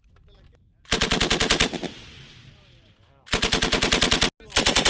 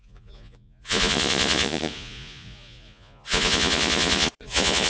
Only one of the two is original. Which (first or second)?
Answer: first